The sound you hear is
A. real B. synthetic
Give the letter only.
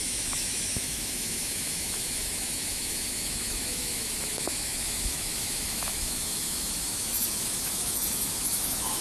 B